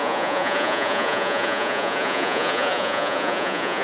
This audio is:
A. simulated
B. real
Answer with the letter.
A